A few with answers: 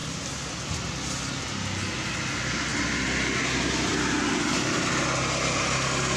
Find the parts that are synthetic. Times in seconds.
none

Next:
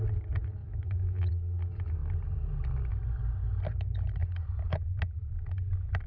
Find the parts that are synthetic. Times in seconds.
0.6-1.3 (autoencoder, DAC-VAE)

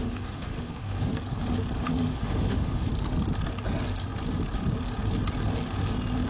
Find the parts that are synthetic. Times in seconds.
0.0-1.1 (autoencoder, DAC-VAE); 2.1-2.9

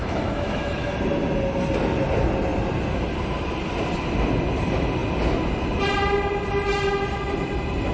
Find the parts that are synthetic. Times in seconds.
0.0-0.9 (autoencoder, DAC-VAE)

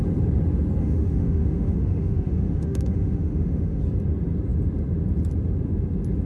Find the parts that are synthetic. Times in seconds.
0.8-3.8 (autoencoder, DAC-VAE)